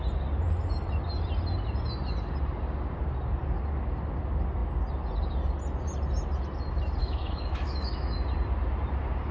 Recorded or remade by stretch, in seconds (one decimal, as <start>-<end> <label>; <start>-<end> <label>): 0.0-7.0 recorded; 7.0-8.2 remade; 8.2-9.3 recorded